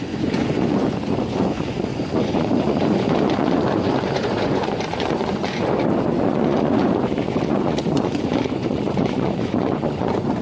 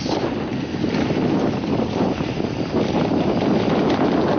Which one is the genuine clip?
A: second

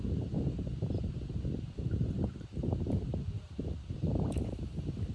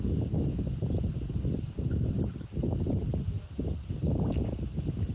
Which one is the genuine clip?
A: second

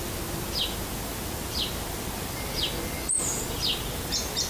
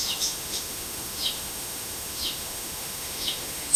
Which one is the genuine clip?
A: first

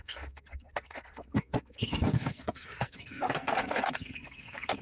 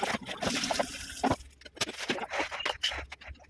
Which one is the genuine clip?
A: second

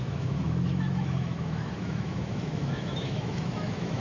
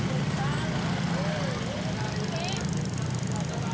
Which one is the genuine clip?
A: second